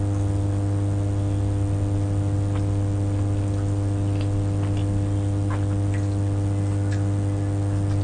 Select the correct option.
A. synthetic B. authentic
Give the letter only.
B